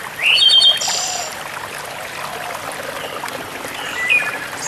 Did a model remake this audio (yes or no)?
no